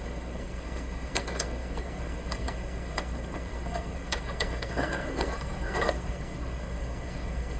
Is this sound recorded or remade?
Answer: remade